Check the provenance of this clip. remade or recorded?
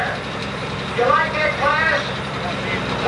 remade